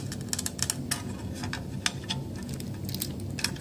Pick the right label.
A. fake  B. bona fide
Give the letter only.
B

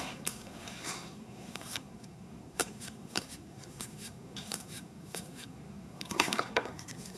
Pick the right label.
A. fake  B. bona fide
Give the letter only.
A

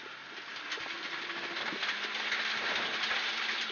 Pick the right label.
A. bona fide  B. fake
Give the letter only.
A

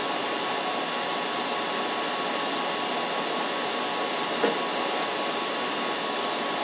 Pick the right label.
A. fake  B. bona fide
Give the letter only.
B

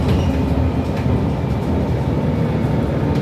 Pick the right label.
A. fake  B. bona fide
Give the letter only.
B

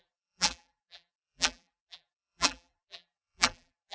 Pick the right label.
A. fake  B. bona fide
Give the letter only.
A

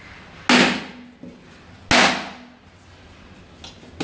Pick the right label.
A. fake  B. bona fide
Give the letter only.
B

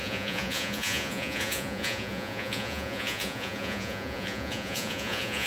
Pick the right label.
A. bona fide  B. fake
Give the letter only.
B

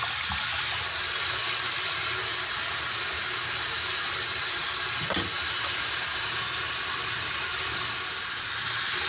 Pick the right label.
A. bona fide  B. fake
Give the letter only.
A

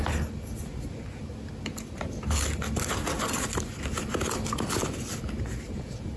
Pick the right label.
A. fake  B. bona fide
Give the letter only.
B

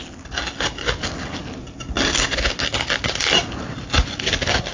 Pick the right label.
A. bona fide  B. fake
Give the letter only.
A